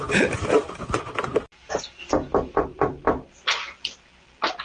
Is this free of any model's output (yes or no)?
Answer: no